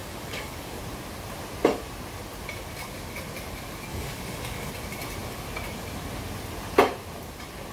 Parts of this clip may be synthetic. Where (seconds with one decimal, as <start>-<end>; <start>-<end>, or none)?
0.0-0.8; 3.9-4.7